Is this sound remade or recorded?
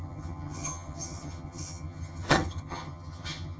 remade